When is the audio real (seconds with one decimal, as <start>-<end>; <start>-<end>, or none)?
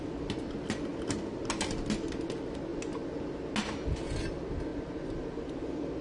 0.0-6.0